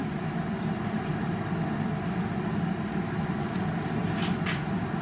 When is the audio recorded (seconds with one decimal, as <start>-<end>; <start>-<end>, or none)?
0.0-5.0